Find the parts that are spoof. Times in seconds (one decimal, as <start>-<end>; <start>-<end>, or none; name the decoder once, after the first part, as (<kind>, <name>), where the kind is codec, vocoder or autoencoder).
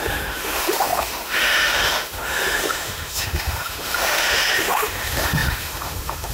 0.0-6.3 (autoencoder, DAC-VAE)